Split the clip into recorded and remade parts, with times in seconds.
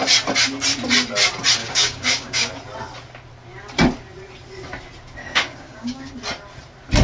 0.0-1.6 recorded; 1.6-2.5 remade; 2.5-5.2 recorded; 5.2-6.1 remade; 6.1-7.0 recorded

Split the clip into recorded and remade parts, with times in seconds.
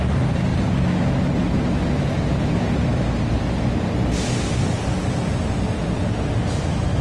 0.0-7.0 recorded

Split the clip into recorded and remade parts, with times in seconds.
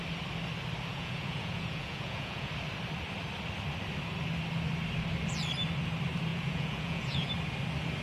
0.0-0.9 recorded; 0.9-2.5 remade; 2.5-6.3 recorded; 6.3-7.3 remade; 7.3-8.0 recorded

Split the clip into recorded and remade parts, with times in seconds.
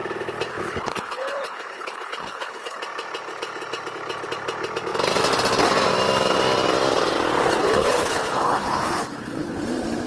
0.0-0.5 recorded; 0.5-2.8 remade; 2.8-7.6 recorded; 7.6-9.6 remade; 9.6-10.1 recorded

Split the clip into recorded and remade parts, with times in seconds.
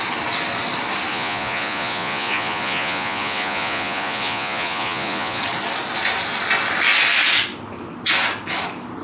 0.0-1.1 recorded; 1.1-5.4 remade; 5.4-9.0 recorded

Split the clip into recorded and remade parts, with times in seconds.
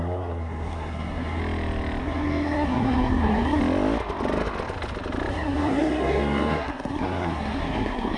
0.0-1.4 remade; 1.4-2.0 recorded; 2.0-3.6 remade; 3.6-5.3 recorded; 5.3-8.2 remade